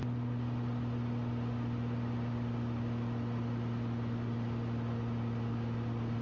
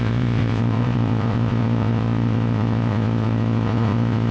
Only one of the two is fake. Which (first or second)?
second